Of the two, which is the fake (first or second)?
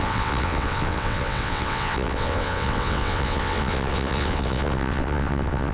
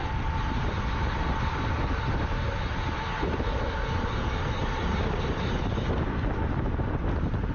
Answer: first